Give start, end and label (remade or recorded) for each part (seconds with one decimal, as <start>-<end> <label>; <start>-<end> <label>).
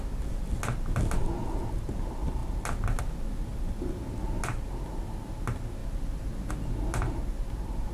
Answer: 0.0-7.9 recorded